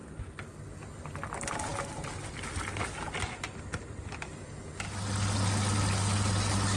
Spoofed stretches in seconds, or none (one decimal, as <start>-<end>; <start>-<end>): none